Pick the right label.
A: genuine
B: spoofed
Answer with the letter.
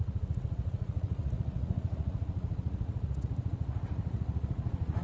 B